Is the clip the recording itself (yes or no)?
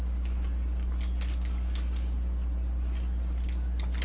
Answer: yes